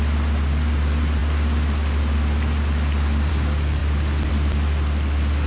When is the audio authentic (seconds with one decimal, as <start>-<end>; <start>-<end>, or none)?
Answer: 0.0-5.5